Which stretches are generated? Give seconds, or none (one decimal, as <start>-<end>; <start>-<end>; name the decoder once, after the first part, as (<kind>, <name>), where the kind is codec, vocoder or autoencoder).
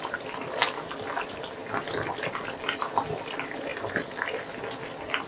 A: none